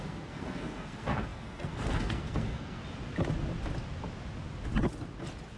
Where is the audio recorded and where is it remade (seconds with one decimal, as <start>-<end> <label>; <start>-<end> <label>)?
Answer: 0.0-2.8 remade; 2.8-5.6 recorded